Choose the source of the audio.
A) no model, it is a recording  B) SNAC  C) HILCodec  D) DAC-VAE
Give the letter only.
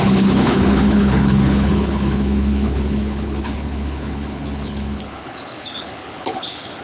C